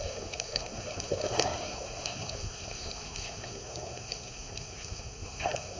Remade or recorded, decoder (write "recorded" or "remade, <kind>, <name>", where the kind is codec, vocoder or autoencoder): remade, codec, SNAC